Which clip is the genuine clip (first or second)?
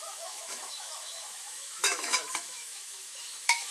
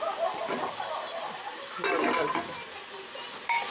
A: second